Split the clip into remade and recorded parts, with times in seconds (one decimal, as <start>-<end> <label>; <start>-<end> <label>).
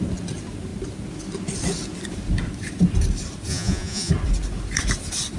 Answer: 0.0-3.5 recorded; 3.5-4.1 remade; 4.1-5.4 recorded